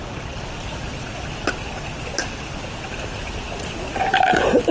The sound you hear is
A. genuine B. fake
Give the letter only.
A